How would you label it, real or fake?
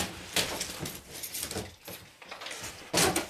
real